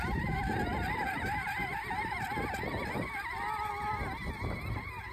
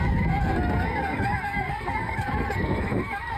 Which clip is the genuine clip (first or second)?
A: first